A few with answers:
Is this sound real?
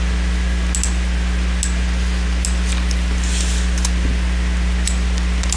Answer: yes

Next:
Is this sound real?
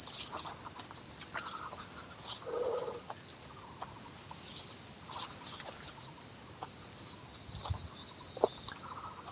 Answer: yes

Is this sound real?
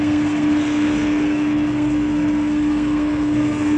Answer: no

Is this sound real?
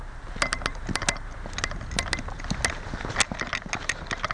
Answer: yes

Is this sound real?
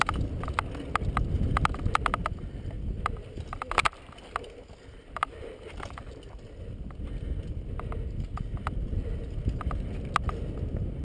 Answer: yes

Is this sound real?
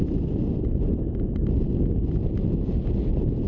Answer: yes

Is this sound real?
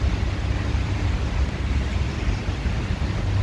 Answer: yes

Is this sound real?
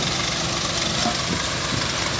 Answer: yes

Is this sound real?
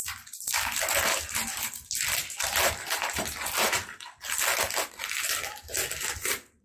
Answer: yes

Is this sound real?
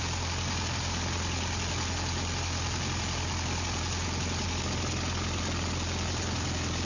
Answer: yes